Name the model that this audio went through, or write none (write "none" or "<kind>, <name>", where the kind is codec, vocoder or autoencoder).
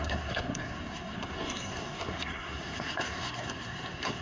codec, SNAC